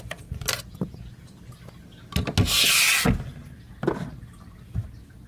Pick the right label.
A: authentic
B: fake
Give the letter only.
A